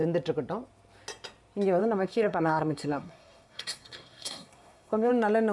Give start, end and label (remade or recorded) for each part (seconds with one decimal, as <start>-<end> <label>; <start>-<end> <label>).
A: 0.0-1.8 recorded; 1.8-5.1 remade; 5.1-5.5 recorded